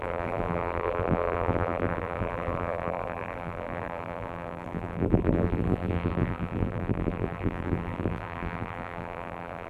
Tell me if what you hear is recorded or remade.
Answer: remade